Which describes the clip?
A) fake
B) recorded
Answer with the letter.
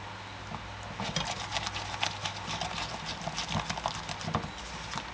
B